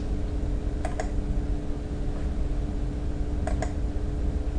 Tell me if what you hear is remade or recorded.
recorded